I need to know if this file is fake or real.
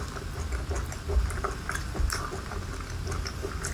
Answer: real